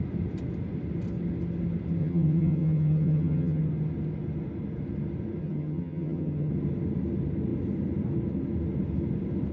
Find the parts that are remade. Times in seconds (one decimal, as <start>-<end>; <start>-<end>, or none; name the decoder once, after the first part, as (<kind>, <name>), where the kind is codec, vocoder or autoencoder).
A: 2.0-3.6 (vocoder, HiFi-GAN); 5.4-6.5